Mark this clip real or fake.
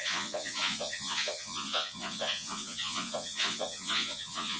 fake